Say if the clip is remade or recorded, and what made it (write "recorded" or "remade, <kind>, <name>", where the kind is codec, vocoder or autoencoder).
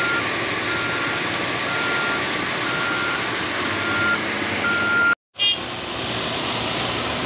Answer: recorded